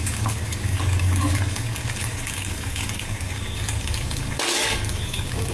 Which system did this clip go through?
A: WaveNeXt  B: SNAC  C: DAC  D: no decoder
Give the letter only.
C